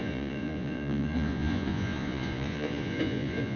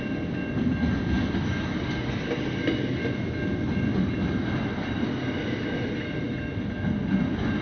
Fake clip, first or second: first